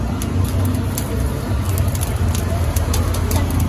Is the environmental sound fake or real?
real